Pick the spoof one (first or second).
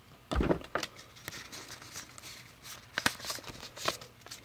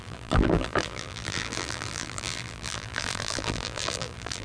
second